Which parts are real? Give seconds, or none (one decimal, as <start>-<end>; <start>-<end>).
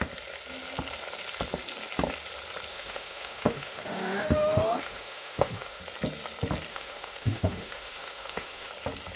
0.0-2.7; 5.8-6.7; 8.7-9.2